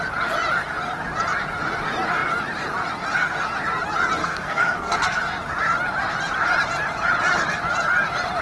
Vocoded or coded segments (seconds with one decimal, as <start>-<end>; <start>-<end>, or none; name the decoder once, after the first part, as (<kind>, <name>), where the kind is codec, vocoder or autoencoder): 4.2-5.2 (codec, SNAC)